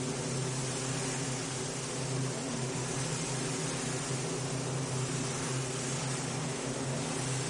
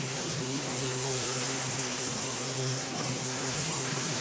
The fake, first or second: second